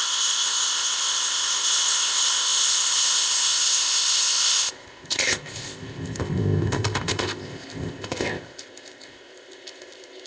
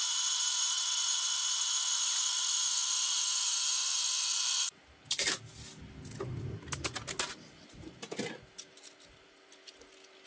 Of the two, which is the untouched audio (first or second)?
second